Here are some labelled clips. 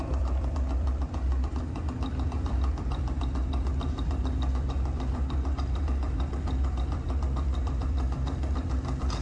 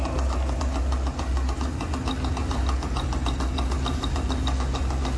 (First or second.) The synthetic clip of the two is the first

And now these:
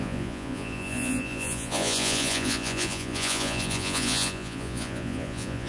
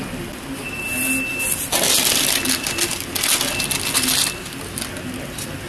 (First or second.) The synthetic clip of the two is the first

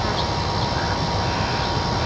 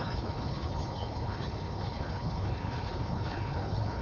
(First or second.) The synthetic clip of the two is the second